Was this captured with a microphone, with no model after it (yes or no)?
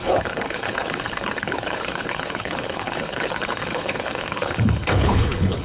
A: no